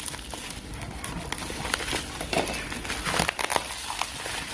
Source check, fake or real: real